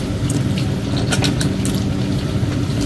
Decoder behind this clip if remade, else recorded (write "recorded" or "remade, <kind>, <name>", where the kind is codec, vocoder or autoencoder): recorded